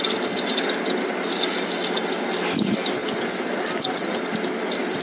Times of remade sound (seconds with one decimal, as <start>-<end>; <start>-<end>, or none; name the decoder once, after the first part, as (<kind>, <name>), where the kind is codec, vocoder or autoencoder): none